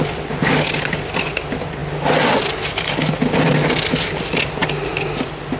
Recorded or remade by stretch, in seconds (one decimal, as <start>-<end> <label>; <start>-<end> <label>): 0.0-5.6 recorded